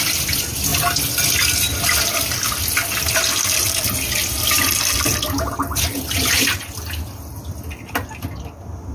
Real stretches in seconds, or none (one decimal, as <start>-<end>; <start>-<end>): 0.0-8.9